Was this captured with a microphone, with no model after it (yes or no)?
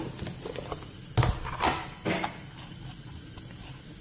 yes